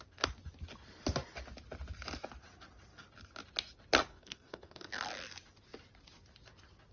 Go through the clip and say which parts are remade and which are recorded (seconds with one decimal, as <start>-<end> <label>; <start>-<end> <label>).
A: 0.0-4.1 recorded; 4.1-4.9 remade; 4.9-6.9 recorded